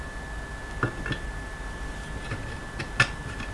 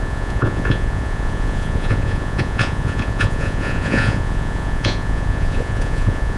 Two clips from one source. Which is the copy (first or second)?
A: second